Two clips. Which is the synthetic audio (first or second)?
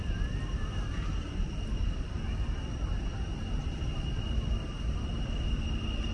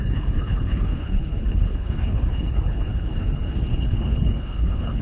second